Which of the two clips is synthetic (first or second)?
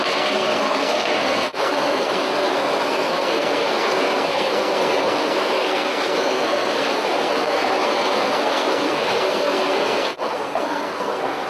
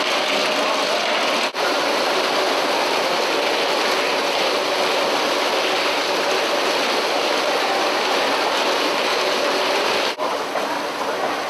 first